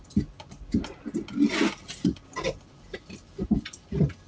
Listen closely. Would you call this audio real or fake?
real